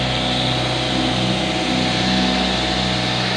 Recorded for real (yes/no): yes